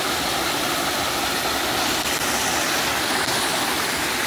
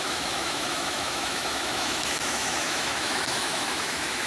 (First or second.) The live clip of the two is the first